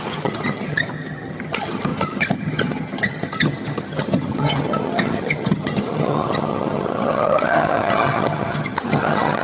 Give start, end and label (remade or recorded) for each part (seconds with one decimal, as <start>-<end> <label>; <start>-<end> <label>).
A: 0.0-9.4 remade